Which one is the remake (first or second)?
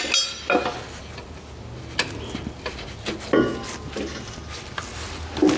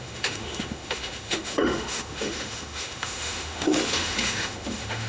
second